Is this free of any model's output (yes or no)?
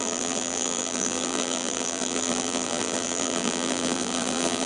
no